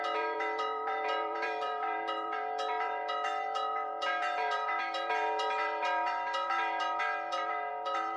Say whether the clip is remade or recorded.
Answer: remade